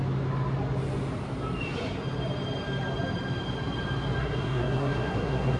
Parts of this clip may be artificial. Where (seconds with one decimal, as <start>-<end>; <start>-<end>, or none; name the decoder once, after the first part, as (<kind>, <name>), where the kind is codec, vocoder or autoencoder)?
4.2-5.6 (codec, SNAC)